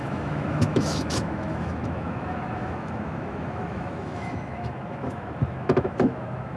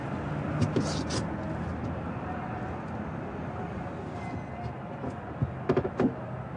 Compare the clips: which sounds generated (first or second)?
first